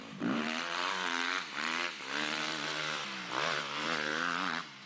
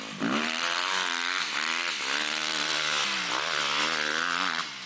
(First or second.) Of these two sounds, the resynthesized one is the first